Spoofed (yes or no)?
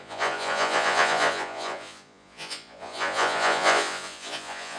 yes